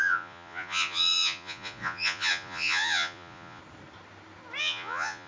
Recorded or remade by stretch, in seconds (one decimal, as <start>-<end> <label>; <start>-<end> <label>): 0.0-3.6 remade; 3.6-4.6 recorded; 4.6-5.3 remade